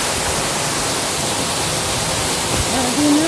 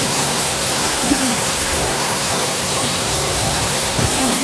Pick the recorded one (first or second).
first